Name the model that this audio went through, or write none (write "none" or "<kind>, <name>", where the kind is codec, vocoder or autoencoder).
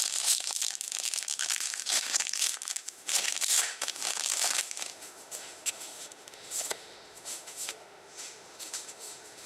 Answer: autoencoder, DAC-VAE